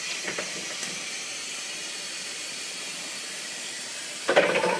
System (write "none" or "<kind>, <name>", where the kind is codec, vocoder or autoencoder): none